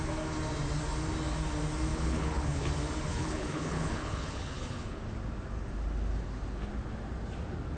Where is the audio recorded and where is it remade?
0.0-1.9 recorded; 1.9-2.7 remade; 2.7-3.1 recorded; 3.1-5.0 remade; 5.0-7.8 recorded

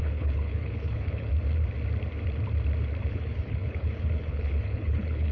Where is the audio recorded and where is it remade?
0.0-1.3 remade; 1.3-3.1 recorded; 3.1-5.3 remade

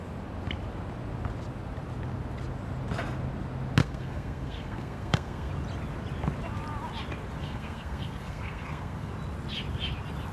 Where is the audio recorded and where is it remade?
0.0-3.8 recorded; 3.8-5.5 remade; 5.5-7.4 recorded; 7.4-9.1 remade; 9.1-10.3 recorded

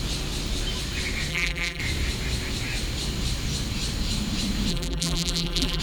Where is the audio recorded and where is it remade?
0.0-1.3 recorded; 1.3-1.8 remade; 1.8-4.7 recorded; 4.7-5.8 remade